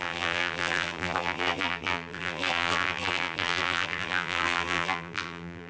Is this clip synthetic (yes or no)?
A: yes